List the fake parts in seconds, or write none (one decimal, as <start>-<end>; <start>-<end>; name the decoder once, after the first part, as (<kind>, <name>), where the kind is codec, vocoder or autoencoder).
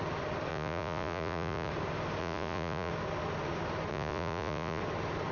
0.5-1.7 (vocoder, Vocos); 2.2-2.9; 3.9-4.8